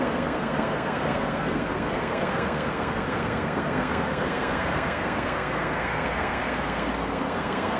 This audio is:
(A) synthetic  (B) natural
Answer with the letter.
A